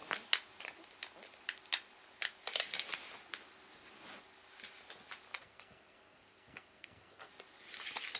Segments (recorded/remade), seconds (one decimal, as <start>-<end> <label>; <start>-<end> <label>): 0.0-5.4 recorded; 5.4-7.3 remade; 7.3-8.2 recorded

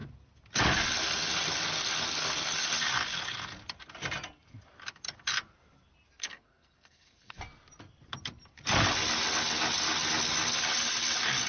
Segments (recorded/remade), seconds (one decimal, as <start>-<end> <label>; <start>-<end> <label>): 0.0-6.2 recorded; 6.2-7.4 remade; 7.4-11.5 recorded

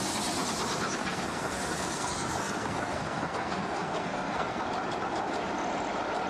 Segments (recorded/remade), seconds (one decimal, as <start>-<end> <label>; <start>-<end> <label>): 0.0-1.0 recorded; 1.0-4.6 remade; 4.6-6.3 recorded